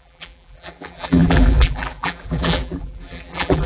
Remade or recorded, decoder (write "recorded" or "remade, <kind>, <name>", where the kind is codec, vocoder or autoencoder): remade, vocoder, BigVGAN v2